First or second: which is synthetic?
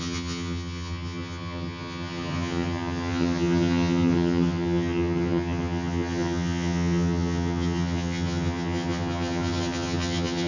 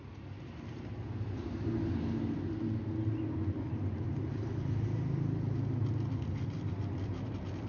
first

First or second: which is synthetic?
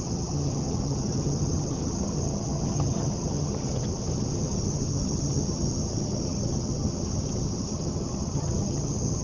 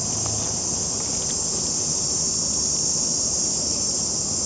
first